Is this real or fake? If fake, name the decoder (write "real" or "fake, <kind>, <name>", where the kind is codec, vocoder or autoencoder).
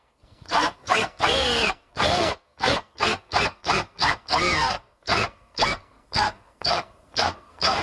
fake, codec, SNAC